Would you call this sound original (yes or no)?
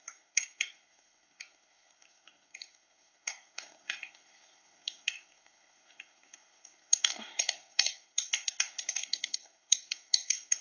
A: no